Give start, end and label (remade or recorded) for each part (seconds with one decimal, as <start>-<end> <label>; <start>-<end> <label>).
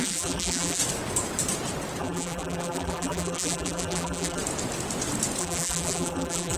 0.0-0.8 remade; 0.8-2.0 recorded; 2.0-4.4 remade; 4.4-5.4 recorded; 5.4-6.6 remade